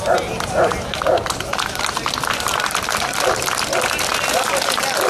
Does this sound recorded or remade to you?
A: recorded